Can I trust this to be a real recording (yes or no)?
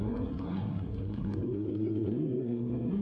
no